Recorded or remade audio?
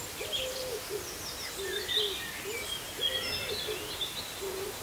recorded